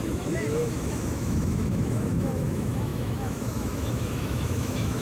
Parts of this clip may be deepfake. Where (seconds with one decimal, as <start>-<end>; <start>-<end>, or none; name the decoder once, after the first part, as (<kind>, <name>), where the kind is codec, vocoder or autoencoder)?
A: 0.0-5.0 (autoencoder, DAC-VAE)